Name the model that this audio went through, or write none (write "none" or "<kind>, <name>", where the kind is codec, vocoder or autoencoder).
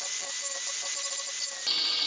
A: none